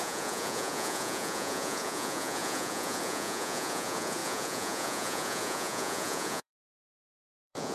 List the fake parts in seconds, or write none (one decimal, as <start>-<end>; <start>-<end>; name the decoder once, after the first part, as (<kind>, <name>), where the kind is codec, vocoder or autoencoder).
0.0-7.7 (vocoder, Vocos)